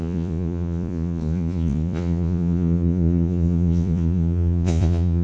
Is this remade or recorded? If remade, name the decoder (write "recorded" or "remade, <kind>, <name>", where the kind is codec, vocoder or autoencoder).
remade, vocoder, Vocos